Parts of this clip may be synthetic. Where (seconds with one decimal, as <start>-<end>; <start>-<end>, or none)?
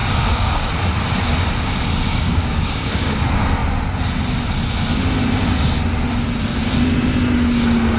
0.0-0.7; 2.1-3.2